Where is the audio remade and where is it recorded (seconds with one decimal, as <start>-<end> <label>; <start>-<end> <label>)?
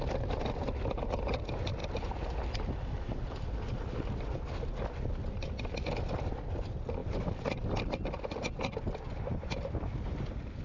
0.0-1.8 recorded; 1.8-5.1 remade; 5.1-7.0 recorded; 7.0-9.3 remade; 9.3-10.6 recorded